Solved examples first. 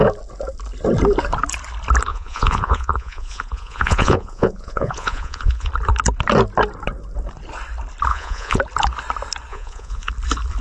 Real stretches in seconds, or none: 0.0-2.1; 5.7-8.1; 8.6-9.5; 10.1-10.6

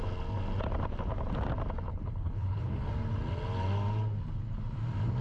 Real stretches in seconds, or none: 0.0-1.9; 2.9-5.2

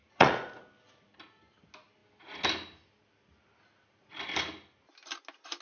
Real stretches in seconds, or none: 0.6-5.6